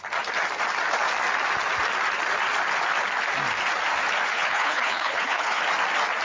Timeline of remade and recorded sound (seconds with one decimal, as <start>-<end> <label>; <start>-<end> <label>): 0.0-4.3 recorded; 4.3-5.6 remade; 5.6-6.2 recorded